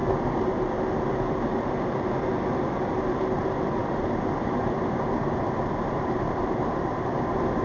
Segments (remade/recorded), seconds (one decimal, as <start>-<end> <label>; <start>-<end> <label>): 0.0-3.8 recorded; 3.8-7.1 remade; 7.1-7.6 recorded